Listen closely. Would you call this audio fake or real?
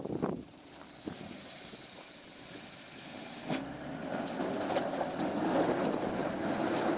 real